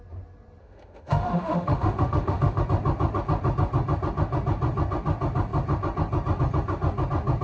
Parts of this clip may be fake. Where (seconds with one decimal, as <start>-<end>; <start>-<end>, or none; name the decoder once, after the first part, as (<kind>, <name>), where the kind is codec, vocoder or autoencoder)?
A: 0.6-2.6 (autoencoder, DAC-VAE)